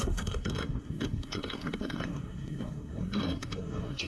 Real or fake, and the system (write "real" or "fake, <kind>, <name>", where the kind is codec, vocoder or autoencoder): fake, codec, SNAC